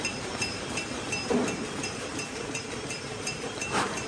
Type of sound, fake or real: fake